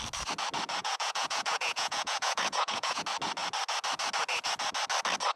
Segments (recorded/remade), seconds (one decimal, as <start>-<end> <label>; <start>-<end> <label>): 0.0-0.8 recorded; 0.8-3.0 remade; 3.0-5.4 recorded